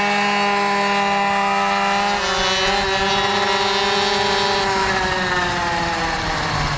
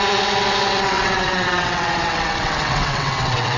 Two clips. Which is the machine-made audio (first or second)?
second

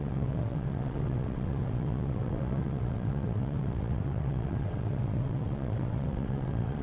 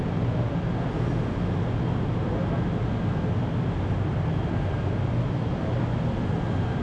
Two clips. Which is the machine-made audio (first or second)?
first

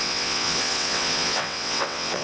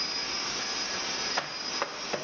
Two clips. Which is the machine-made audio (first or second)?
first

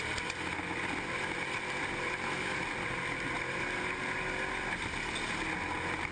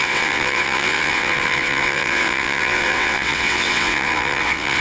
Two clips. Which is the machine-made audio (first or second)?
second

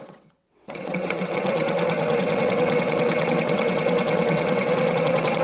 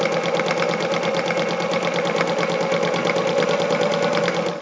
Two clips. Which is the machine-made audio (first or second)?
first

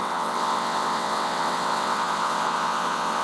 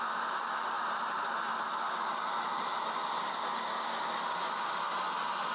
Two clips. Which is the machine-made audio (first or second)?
first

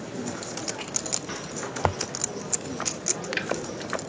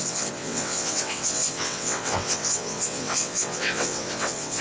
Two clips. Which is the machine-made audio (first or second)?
second